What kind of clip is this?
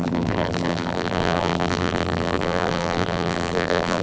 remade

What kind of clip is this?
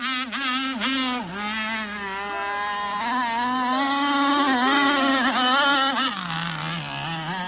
recorded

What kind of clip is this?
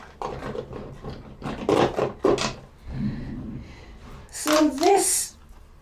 recorded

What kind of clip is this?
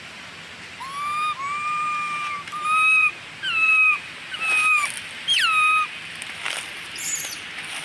recorded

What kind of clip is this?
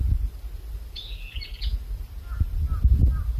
recorded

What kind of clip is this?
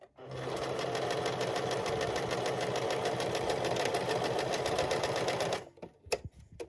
recorded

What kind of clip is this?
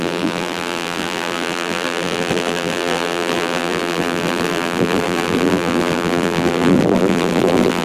remade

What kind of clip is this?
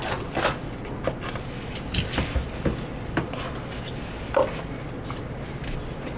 recorded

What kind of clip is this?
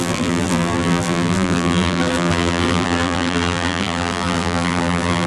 remade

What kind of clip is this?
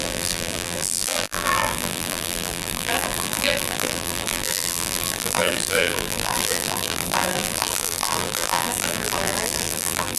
remade